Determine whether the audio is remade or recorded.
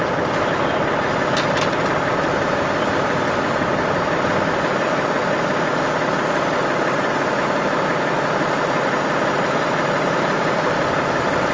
recorded